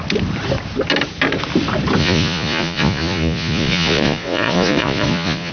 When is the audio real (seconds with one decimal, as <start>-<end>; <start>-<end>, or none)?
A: 0.0-2.0